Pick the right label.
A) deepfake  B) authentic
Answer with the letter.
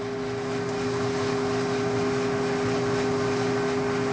B